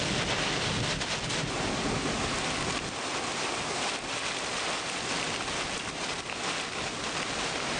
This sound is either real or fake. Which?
real